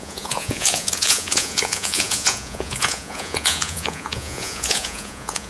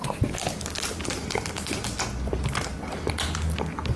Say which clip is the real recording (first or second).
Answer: second